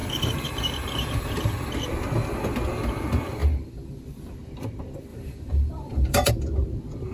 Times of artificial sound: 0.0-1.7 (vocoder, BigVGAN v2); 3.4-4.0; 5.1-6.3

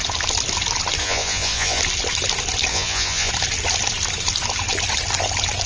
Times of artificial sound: 1.0-1.8 (vocoder, Vocos); 2.7-3.3